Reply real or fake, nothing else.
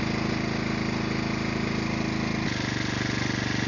real